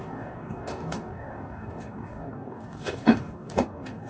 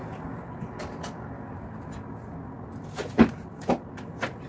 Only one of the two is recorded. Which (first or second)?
second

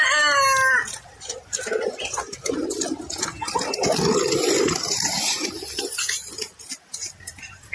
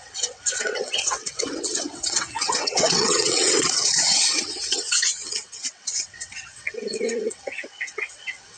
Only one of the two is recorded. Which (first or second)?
first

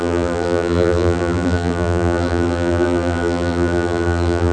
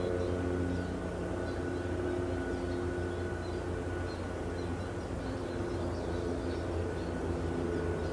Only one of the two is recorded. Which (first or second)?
second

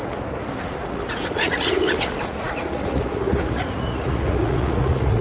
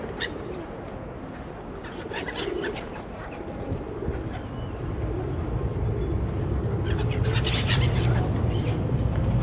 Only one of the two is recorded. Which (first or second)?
second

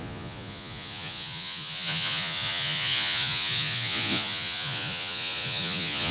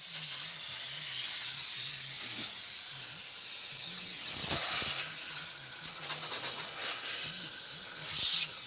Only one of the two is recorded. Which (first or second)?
second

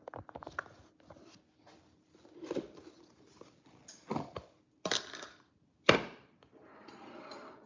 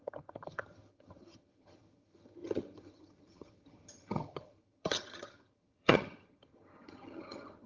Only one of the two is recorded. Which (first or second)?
first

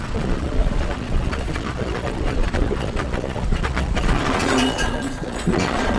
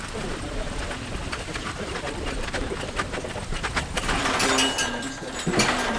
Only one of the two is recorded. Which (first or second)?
second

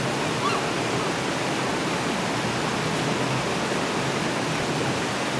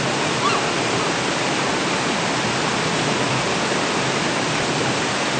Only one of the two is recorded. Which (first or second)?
first